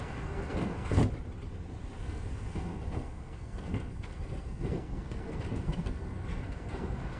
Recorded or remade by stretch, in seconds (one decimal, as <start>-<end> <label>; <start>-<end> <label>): 0.0-1.0 remade; 1.0-2.0 recorded; 2.0-7.2 remade